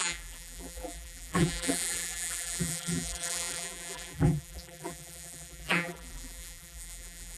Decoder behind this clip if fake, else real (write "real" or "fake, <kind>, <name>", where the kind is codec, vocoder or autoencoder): fake, vocoder, BigVGAN v2